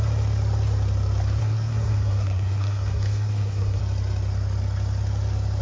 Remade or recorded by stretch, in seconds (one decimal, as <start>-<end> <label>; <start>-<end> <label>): 0.0-1.4 recorded; 1.4-3.8 remade; 3.8-5.6 recorded